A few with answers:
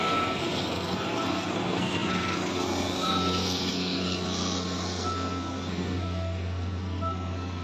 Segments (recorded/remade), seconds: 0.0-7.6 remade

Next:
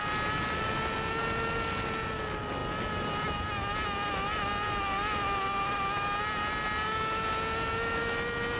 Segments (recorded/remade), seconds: 0.0-8.6 recorded

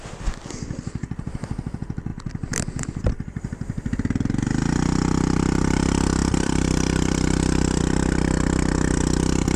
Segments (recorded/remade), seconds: 0.0-6.2 recorded; 6.2-7.8 remade; 7.8-9.6 recorded